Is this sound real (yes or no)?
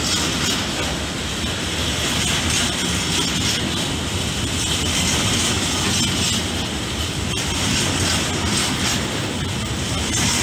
yes